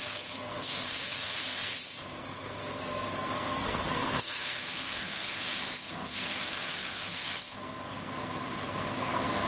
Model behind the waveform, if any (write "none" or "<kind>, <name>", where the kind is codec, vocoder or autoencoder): codec, SNAC